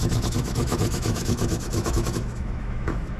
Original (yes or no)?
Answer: no